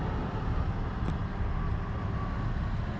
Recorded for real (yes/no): yes